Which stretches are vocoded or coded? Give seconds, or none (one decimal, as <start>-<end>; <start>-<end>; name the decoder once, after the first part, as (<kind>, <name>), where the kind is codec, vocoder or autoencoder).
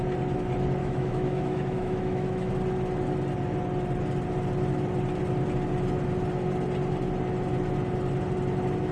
0.8-2.5 (autoencoder, DAC-VAE)